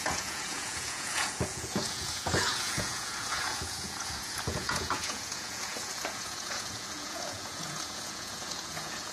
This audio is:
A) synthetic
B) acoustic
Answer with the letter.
A